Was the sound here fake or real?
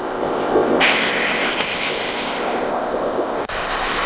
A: fake